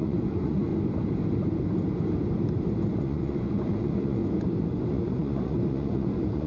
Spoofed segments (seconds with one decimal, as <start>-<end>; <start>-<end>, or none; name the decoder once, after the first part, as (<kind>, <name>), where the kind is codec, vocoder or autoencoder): 0.0-0.7 (vocoder, Vocos); 2.9-4.2; 4.9-6.5